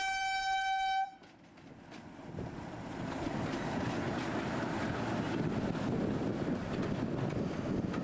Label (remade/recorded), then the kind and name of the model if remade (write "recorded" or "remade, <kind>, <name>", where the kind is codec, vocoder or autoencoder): recorded